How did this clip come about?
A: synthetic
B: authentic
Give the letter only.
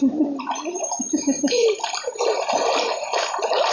B